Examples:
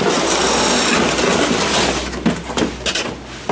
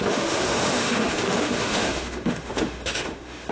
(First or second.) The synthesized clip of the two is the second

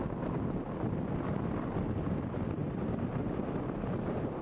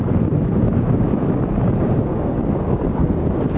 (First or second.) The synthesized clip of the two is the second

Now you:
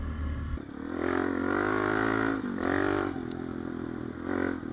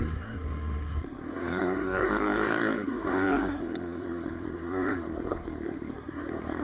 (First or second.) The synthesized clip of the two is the second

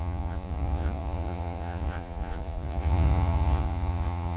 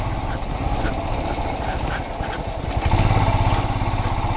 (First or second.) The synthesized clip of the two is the first